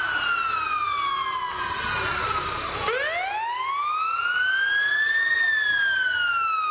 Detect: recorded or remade recorded